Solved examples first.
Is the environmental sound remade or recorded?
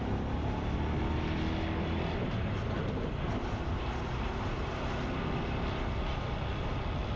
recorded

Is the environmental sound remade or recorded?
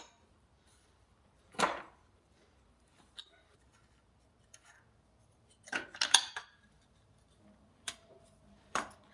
remade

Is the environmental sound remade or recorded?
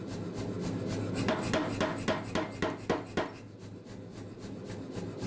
recorded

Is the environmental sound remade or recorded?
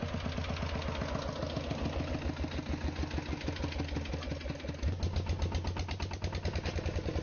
recorded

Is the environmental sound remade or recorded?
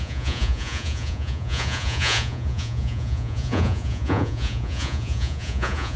remade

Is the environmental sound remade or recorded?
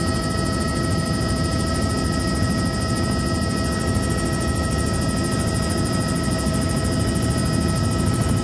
recorded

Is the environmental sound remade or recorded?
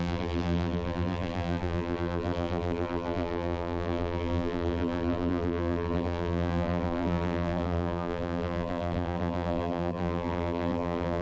remade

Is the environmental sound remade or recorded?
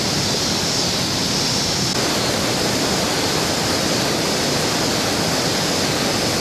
recorded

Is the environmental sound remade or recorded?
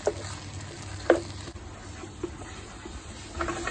recorded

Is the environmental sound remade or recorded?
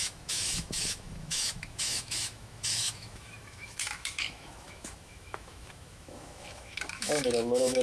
remade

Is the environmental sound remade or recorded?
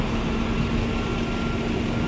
recorded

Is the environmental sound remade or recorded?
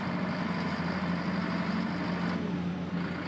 recorded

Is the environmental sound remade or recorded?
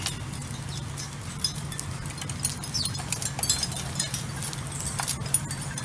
recorded